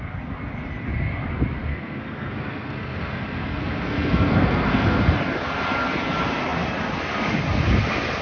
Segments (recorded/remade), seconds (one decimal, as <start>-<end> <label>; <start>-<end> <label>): 0.0-1.7 recorded; 1.7-5.0 remade; 5.0-8.2 recorded